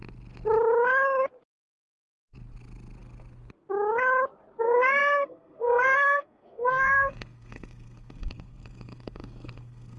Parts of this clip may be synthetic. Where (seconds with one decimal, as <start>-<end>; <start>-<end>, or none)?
4.6-10.0